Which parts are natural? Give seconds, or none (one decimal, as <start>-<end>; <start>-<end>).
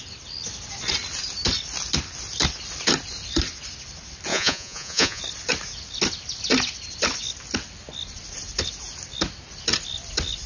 0.0-4.3; 5.2-10.5